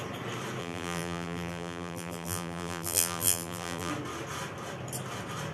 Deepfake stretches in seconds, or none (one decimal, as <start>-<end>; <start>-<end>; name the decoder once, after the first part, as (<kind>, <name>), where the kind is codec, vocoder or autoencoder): 0.6-3.9 (vocoder, BigVGAN v2)